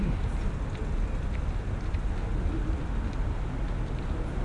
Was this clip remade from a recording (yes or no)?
no